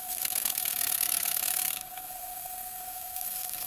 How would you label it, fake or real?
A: fake